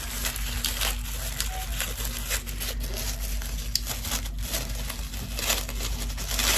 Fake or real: real